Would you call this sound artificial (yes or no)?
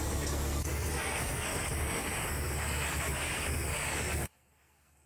yes